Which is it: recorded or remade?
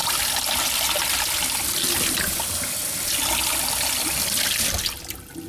recorded